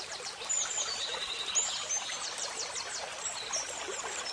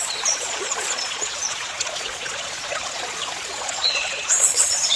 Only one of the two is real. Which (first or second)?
first